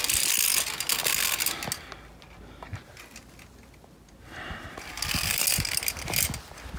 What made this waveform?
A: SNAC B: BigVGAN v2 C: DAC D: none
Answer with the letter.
D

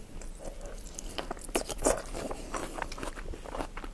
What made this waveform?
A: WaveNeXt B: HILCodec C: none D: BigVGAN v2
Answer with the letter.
C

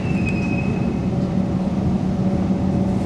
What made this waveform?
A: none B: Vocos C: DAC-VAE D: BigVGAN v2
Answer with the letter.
A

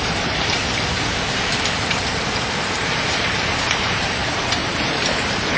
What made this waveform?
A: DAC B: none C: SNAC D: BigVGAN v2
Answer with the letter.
D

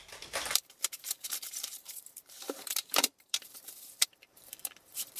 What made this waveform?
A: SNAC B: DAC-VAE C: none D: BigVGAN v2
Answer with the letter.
D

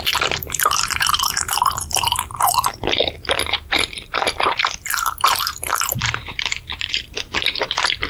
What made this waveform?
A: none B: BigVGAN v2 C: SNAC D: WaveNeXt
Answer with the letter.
B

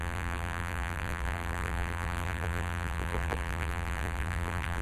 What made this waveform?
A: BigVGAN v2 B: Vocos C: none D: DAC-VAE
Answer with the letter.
A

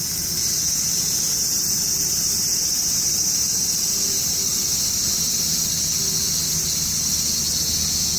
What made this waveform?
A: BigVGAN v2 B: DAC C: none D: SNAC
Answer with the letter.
C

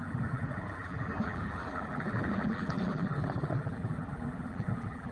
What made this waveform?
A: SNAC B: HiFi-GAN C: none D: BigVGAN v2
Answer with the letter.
D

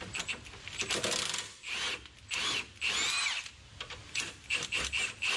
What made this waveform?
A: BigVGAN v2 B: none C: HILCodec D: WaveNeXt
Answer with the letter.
B